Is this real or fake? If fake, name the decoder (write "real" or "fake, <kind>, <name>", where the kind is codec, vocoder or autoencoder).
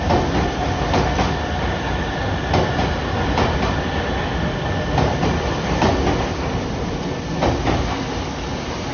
real